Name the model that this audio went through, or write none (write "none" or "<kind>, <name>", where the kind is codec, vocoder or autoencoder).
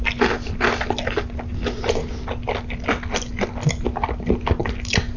none